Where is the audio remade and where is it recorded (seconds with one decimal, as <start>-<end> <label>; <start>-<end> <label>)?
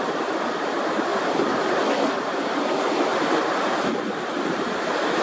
0.0-5.2 recorded